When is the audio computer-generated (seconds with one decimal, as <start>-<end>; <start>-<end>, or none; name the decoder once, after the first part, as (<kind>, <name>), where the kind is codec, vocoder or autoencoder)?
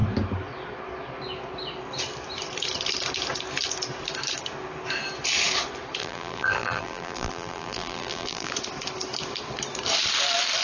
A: 6.0-8.5 (vocoder, BigVGAN v2)